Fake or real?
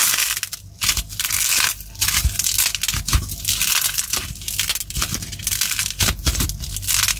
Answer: real